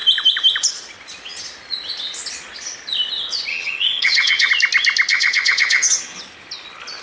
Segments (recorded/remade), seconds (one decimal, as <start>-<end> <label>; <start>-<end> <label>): 0.0-3.5 recorded; 3.5-4.5 remade; 4.5-5.1 recorded; 5.1-6.2 remade; 6.2-7.0 recorded